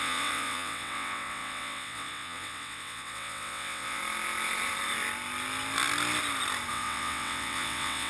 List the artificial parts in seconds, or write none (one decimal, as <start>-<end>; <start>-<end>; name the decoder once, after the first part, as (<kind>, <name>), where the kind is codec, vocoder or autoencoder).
0.0-4.0 (vocoder, WaveNeXt); 6.7-8.1